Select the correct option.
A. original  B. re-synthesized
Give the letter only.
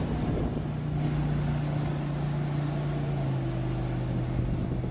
A